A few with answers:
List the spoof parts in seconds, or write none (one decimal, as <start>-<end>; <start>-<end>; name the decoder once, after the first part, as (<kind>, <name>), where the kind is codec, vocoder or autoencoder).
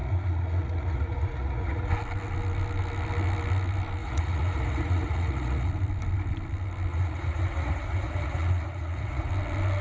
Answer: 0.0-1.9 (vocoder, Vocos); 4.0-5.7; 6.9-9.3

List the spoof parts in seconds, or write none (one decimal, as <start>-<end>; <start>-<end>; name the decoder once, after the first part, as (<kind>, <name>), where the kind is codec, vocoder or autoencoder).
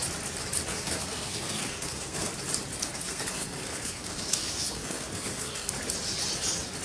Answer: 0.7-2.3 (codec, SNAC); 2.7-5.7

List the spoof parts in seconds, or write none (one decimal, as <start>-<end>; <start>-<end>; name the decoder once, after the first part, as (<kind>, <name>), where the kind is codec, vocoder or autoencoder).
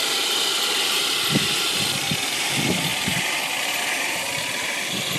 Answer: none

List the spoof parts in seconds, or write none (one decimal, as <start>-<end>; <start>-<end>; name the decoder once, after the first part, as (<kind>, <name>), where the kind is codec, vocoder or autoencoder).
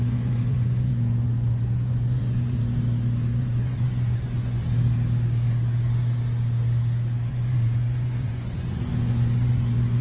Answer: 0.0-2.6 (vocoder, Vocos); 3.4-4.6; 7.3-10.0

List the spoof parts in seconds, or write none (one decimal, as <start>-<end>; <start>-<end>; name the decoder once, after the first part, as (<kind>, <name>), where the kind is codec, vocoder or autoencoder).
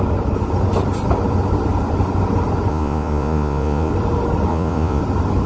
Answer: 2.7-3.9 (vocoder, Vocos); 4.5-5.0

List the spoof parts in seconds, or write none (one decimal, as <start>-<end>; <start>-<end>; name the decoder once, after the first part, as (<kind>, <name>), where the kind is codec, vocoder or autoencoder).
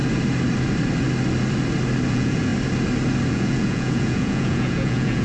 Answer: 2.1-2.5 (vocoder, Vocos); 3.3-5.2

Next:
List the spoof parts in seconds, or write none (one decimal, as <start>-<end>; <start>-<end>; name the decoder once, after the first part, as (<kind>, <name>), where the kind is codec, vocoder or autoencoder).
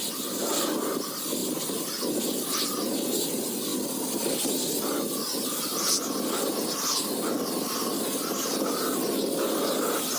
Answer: none